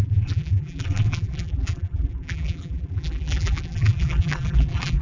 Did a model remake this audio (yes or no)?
yes